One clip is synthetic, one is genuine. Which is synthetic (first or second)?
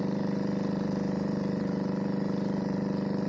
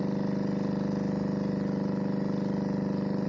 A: first